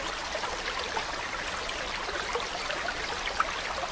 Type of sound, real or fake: real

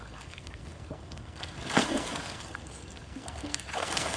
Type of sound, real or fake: fake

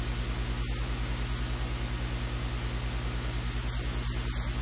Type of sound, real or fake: real